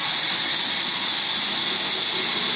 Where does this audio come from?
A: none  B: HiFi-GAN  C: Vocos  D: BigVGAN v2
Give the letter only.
A